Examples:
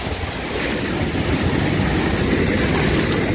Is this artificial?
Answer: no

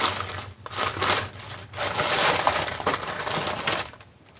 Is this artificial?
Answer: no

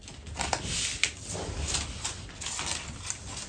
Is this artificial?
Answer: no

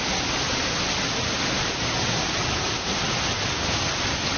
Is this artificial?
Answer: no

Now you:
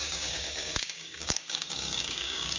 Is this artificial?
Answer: yes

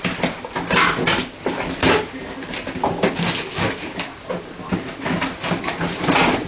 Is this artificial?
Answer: no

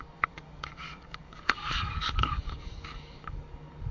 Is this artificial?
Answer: yes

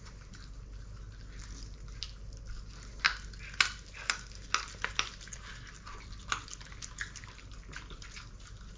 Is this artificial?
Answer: no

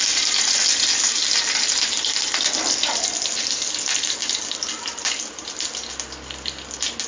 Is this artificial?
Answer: no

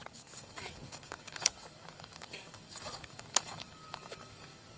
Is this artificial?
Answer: yes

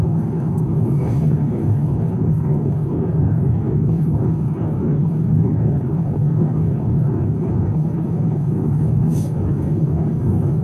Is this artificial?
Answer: yes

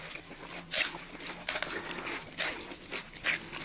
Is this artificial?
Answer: no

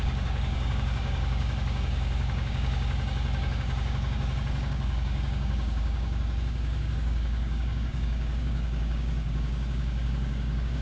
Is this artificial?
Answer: yes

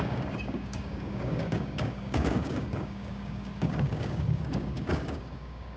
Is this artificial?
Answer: yes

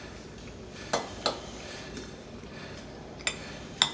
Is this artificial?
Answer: no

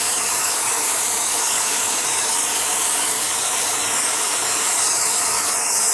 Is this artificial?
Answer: yes